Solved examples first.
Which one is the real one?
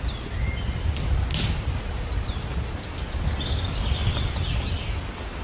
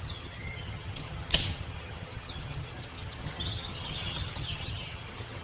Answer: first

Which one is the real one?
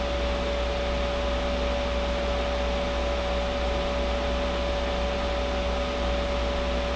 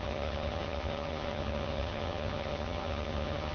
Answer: first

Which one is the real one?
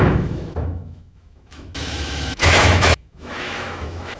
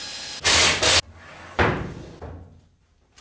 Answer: second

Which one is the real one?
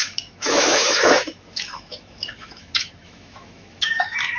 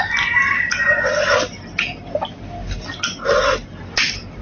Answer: second